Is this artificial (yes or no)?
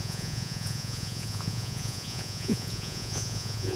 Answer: yes